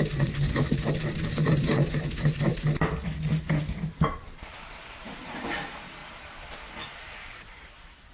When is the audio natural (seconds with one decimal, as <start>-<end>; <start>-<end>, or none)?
2.5-3.6; 6.0-7.1